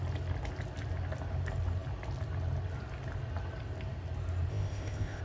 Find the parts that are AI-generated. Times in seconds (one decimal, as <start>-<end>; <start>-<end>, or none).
4.5-5.2